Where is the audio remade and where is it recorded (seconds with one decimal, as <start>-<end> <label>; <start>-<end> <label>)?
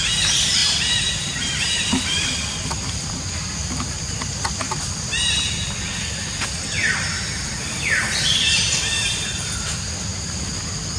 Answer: 0.0-0.6 recorded; 0.6-4.0 remade; 4.0-10.1 recorded; 10.1-11.0 remade